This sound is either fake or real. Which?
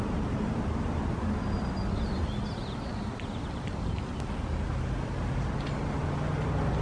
real